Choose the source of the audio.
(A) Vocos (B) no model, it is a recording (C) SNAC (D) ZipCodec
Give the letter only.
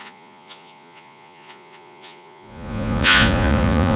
A